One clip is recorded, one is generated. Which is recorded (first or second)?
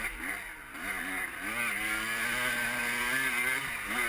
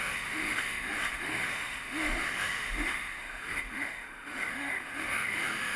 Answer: first